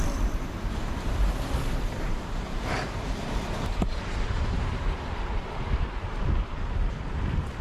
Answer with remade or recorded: remade